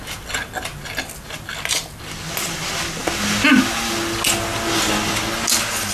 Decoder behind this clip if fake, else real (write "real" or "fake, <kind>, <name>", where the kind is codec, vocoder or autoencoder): real